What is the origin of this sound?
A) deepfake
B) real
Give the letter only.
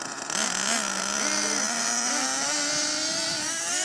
B